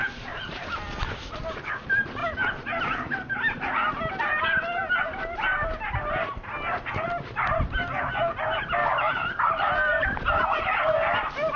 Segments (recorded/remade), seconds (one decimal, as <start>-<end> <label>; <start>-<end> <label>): 0.0-4.8 recorded; 4.8-6.4 remade; 6.4-8.8 recorded; 8.8-10.6 remade; 10.6-11.6 recorded